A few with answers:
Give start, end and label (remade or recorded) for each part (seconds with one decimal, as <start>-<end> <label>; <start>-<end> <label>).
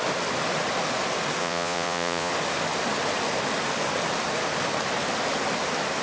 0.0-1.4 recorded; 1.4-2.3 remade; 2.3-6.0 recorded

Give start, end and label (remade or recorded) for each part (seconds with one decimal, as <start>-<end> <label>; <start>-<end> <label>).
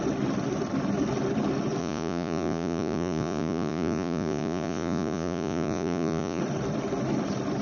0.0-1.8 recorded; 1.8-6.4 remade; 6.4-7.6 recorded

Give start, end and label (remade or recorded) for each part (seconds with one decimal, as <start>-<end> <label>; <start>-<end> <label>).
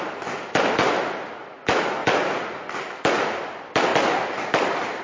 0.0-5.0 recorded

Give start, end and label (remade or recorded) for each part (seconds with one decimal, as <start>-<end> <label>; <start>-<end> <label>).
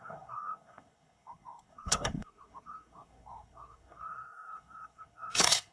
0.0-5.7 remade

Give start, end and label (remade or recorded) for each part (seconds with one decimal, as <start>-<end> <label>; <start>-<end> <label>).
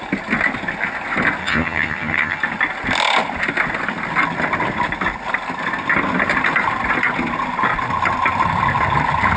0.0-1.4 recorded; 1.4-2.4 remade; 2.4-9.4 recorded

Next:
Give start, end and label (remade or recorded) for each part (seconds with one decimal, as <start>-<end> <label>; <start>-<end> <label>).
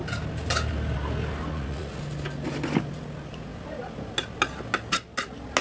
0.0-1.5 recorded; 1.5-2.0 remade; 2.0-5.6 recorded